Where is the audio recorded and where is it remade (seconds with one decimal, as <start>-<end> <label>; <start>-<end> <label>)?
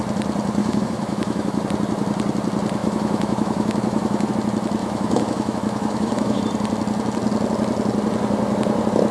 0.0-0.6 recorded; 0.6-1.6 remade; 1.6-2.8 recorded; 2.8-4.3 remade; 4.3-4.8 recorded; 4.8-6.4 remade; 6.4-9.1 recorded